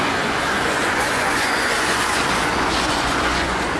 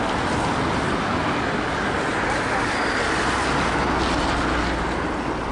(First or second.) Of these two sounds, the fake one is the first